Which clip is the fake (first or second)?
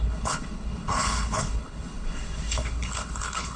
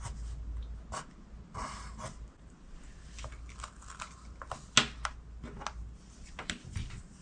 first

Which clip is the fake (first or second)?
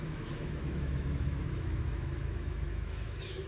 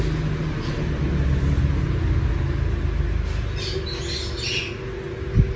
first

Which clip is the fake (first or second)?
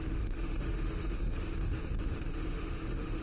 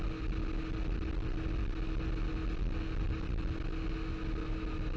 first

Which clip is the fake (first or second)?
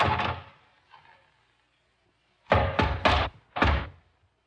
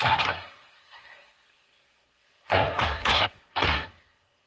second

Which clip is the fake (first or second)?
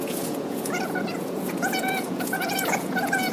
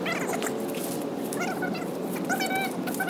first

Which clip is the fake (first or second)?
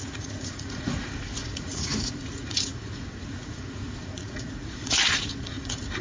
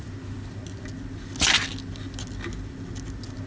first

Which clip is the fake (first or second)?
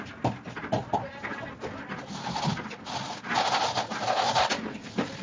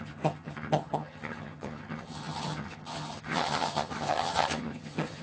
second